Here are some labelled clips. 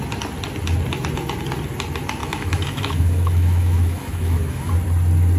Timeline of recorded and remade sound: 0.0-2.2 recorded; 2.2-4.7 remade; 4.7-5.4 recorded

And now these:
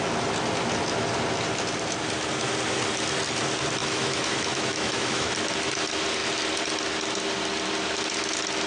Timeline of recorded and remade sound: 0.0-3.8 recorded; 3.8-5.3 remade; 5.3-8.7 recorded

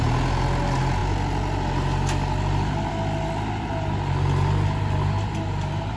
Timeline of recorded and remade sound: 0.0-6.0 recorded

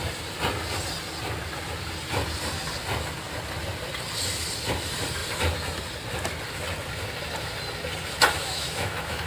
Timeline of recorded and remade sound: 0.0-8.4 recorded; 8.4-9.3 remade

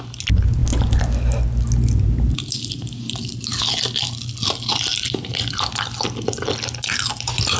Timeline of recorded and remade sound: 0.0-7.6 recorded

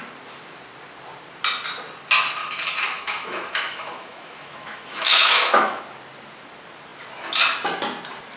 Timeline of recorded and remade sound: 0.0-2.4 recorded; 2.4-5.8 remade; 5.8-8.4 recorded

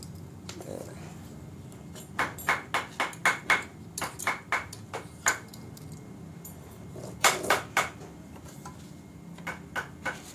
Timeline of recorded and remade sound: 0.0-10.3 recorded